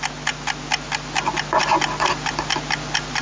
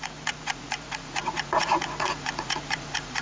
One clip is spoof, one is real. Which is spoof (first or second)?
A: second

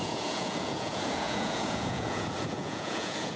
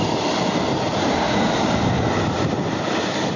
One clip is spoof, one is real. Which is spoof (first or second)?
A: first